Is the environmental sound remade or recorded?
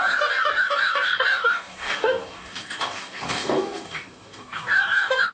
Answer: remade